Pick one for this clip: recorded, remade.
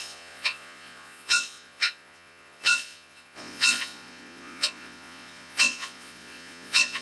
remade